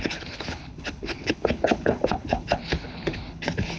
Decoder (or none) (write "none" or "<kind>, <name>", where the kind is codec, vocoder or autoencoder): codec, HILCodec